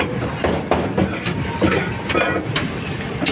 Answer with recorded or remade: recorded